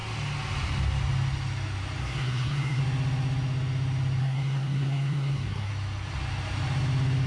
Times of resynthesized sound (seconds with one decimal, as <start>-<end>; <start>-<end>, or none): 2.0-2.8; 4.2-5.7